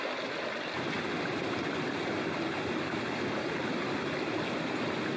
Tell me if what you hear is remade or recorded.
recorded